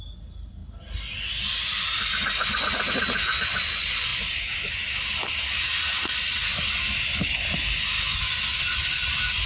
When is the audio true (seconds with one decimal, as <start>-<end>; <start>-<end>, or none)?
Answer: 0.0-9.5